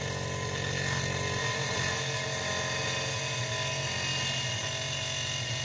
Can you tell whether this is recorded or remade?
recorded